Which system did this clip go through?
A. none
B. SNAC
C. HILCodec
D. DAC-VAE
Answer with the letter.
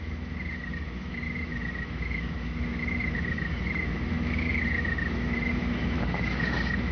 D